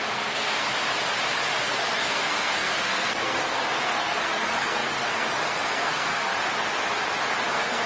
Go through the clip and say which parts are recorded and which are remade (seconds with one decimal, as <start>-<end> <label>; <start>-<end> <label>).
0.0-0.7 remade; 0.7-1.6 recorded; 1.6-6.3 remade; 6.3-7.5 recorded; 7.5-7.9 remade